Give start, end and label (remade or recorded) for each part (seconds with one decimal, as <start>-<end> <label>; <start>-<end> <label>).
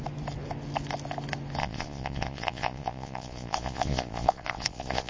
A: 0.0-1.6 recorded; 1.6-5.1 remade